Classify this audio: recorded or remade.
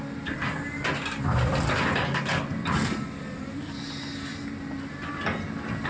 recorded